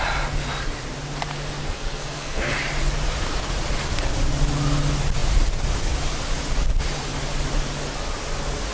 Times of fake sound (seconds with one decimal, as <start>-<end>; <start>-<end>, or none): 1.6-2.5